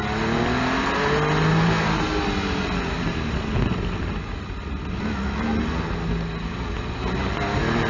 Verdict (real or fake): real